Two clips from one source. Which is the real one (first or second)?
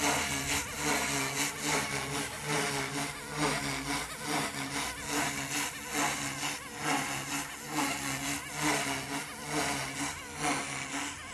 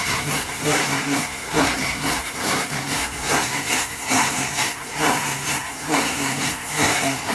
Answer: first